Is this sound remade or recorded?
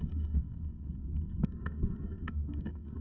remade